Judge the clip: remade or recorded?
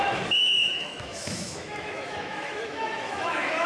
remade